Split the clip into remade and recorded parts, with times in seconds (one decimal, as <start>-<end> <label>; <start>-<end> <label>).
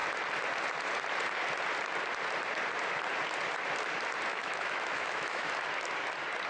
0.0-4.3 recorded; 4.3-5.5 remade; 5.5-6.5 recorded